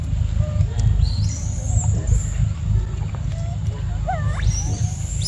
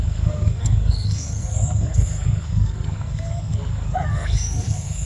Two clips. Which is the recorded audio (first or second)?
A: first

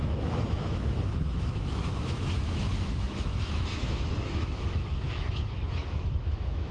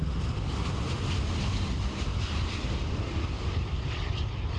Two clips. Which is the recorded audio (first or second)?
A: second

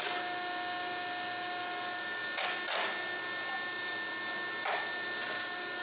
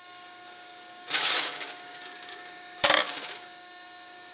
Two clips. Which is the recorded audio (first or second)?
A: first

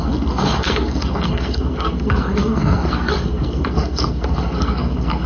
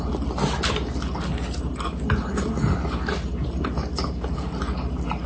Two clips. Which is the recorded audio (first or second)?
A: second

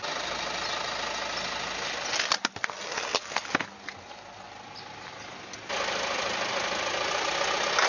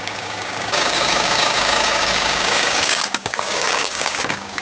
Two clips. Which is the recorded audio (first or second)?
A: first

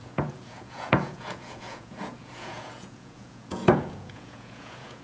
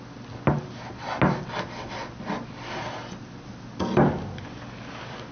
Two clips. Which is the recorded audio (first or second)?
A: second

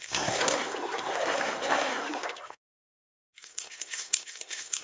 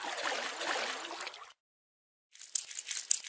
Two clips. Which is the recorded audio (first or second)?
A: second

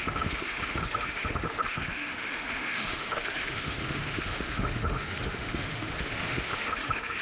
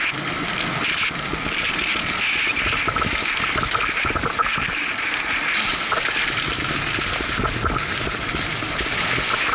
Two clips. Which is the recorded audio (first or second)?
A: second